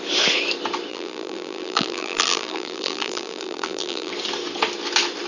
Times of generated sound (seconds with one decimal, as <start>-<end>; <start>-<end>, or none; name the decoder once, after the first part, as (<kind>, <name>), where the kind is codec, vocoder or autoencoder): 0.9-4.1 (vocoder, BigVGAN v2)